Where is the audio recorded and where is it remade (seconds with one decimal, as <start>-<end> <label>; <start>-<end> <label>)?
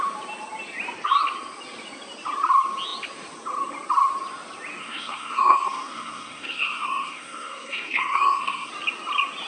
0.0-4.8 recorded; 4.8-8.7 remade; 8.7-9.5 recorded